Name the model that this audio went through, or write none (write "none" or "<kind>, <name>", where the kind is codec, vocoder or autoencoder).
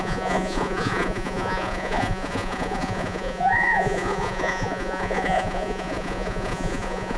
vocoder, Vocos